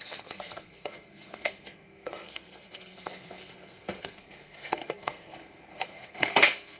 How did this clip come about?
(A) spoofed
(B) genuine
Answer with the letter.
A